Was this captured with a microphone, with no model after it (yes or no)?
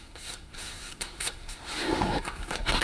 no